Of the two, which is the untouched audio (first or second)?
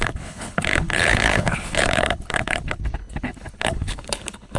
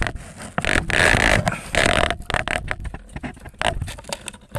second